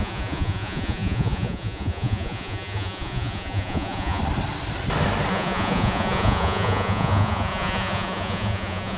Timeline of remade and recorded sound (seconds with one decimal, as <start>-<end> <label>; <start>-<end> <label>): 0.0-4.2 remade; 4.2-5.3 recorded; 5.3-9.0 remade